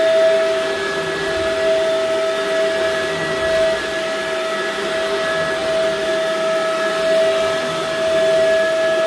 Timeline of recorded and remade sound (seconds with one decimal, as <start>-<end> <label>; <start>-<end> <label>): 0.0-9.1 recorded